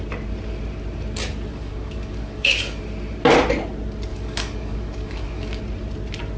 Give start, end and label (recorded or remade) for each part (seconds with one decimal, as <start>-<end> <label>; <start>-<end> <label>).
0.0-1.5 recorded; 1.5-2.8 remade; 2.8-4.1 recorded; 4.1-5.6 remade; 5.6-6.4 recorded

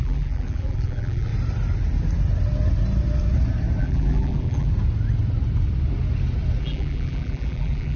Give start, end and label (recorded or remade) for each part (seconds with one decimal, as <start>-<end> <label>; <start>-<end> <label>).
0.0-1.3 remade; 1.3-3.8 recorded; 3.8-4.7 remade; 4.7-6.6 recorded; 6.6-8.0 remade

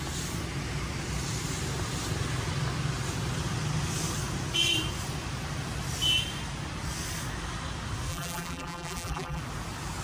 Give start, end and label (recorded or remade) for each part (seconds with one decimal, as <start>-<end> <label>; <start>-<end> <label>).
0.0-8.1 recorded; 8.1-9.4 remade; 9.4-10.0 recorded

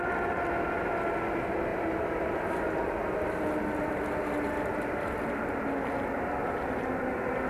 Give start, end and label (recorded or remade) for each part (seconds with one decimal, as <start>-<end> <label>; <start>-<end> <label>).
0.0-1.7 recorded; 1.7-2.6 remade; 2.6-7.5 recorded